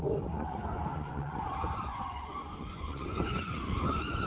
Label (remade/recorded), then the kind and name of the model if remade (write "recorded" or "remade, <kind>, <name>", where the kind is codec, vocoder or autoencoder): remade, vocoder, Vocos